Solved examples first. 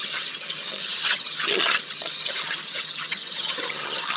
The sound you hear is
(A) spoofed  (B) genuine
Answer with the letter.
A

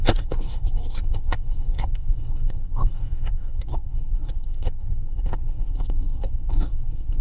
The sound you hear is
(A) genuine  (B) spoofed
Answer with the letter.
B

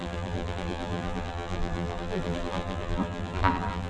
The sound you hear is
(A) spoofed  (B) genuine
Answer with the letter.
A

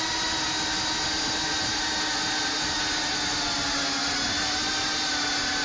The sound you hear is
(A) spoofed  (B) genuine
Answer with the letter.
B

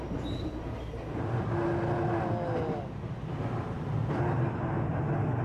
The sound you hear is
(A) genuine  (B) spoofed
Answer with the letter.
A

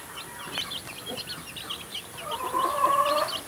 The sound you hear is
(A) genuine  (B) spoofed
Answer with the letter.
A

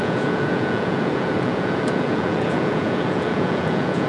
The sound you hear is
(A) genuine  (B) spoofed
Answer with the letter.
B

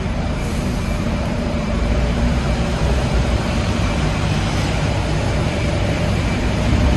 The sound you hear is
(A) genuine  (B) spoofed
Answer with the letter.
B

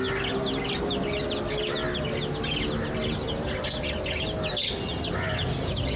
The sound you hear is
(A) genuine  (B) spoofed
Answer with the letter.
A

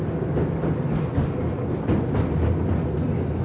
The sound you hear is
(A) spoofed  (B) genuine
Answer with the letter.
B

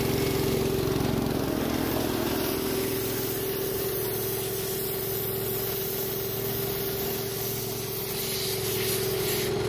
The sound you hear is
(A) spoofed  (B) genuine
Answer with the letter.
B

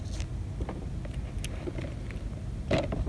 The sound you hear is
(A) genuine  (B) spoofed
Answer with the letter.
A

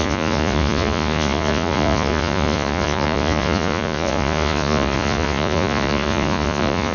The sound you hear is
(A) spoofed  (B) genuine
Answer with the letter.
A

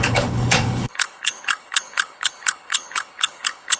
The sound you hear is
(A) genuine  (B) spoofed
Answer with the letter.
B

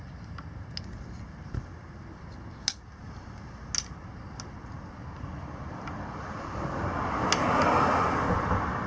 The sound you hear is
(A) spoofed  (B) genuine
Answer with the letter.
B